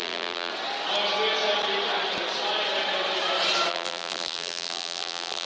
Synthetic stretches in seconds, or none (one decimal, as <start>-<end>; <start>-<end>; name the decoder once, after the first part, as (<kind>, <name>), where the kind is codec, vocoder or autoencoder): 0.0-0.5 (vocoder, BigVGAN v2); 3.7-5.4